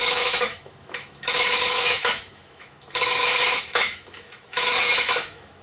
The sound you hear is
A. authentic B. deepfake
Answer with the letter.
B